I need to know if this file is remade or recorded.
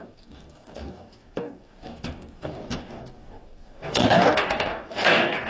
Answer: remade